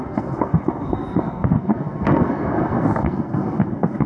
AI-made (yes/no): yes